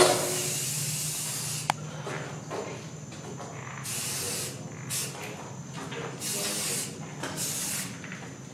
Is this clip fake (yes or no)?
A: no